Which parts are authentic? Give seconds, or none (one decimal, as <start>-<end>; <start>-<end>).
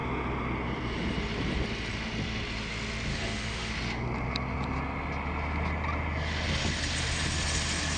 0.0-3.1; 3.7-8.0